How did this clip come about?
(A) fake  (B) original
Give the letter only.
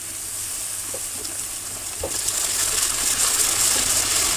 B